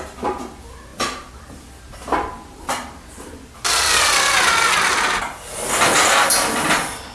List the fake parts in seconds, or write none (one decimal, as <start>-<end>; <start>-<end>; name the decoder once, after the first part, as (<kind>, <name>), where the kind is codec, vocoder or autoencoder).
none